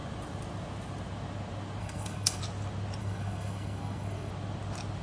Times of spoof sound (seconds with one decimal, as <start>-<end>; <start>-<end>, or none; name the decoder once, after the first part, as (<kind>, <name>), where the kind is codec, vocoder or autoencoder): 1.8-2.4 (codec, SNAC); 3.0-4.3